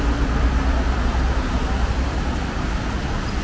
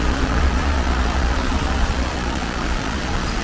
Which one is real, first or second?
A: first